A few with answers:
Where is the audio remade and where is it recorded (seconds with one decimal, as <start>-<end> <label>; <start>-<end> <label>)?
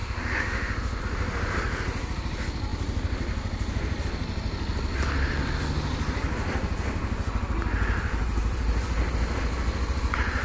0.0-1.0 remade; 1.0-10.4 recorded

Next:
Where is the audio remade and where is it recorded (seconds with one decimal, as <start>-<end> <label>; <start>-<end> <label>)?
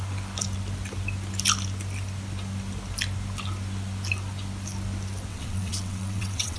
0.0-5.3 recorded; 5.3-6.6 remade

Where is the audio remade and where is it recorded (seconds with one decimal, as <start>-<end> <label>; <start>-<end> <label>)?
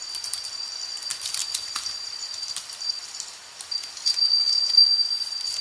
0.0-5.6 recorded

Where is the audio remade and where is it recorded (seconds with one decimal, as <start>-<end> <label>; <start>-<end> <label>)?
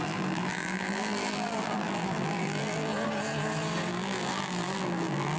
0.0-2.9 remade; 2.9-3.9 recorded; 3.9-5.4 remade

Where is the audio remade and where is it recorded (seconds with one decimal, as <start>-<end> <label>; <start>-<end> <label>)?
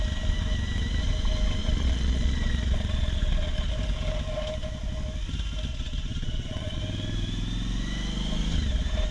0.0-1.6 recorded; 1.6-3.7 remade; 3.7-5.7 recorded; 5.7-6.8 remade; 6.8-9.1 recorded